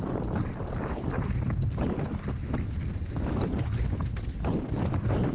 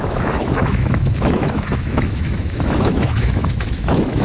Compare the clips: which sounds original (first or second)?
first